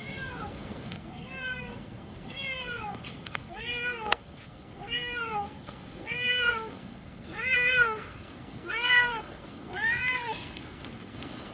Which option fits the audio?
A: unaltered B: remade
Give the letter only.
B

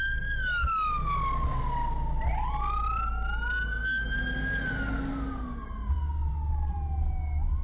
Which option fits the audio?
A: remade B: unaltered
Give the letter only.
B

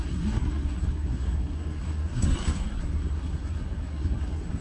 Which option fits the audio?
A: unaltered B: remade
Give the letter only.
B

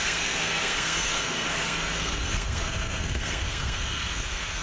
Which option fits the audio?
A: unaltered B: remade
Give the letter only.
B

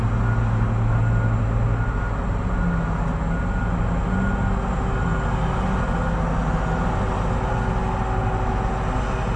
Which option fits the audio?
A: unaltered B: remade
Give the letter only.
A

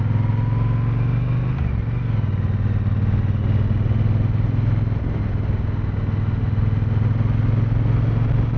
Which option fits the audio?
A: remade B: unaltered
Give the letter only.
B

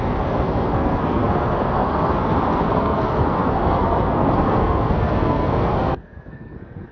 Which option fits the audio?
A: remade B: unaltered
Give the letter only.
A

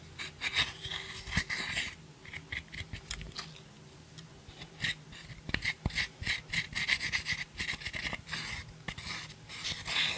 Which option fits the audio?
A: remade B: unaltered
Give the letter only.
B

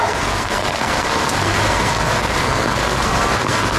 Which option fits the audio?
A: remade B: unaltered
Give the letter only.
A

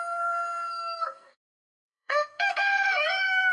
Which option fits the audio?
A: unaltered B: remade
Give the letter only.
B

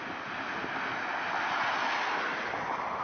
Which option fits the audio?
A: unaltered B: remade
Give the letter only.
A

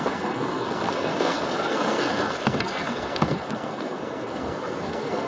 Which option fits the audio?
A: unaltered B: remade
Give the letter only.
B